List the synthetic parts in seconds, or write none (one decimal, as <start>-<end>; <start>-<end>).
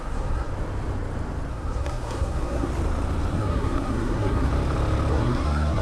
0.0-0.5; 1.5-2.7; 3.3-4.5; 5.1-5.8